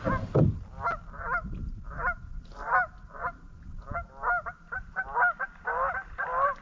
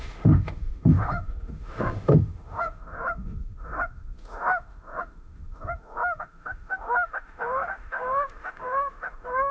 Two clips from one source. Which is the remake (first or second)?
second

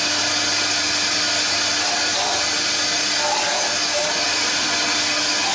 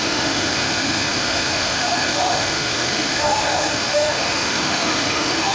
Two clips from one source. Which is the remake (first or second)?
second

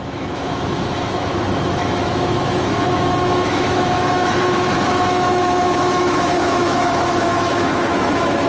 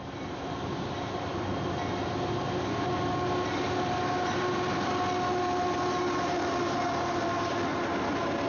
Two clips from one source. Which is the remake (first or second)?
first